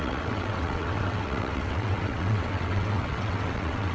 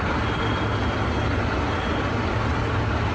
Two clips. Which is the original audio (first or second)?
second